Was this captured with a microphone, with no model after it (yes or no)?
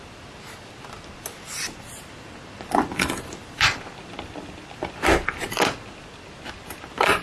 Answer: yes